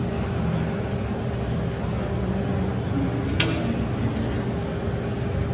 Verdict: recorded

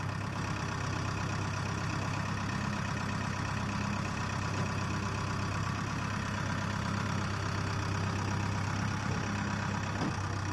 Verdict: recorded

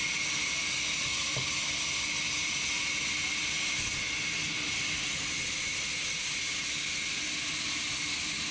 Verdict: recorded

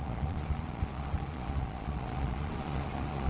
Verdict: remade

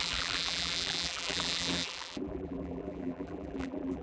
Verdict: remade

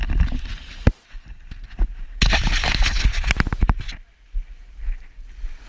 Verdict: recorded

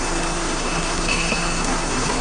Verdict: remade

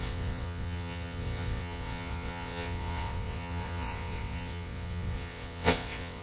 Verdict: remade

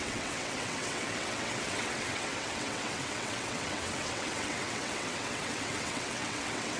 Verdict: remade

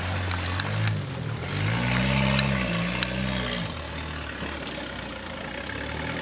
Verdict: recorded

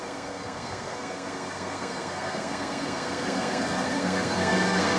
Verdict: remade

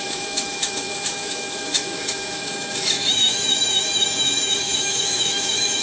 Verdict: remade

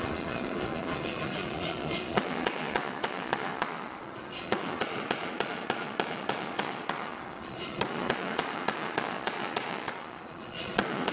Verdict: remade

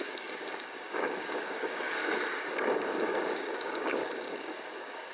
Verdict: remade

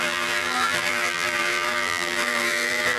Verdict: remade